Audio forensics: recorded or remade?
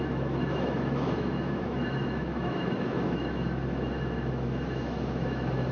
remade